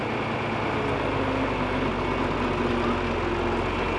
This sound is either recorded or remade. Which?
recorded